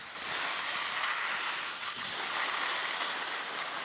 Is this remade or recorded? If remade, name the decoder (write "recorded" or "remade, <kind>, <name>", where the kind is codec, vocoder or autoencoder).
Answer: recorded